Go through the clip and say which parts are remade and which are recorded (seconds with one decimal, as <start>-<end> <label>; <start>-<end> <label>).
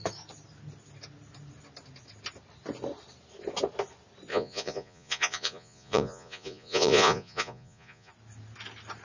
0.0-4.3 recorded; 4.3-8.1 remade; 8.1-9.0 recorded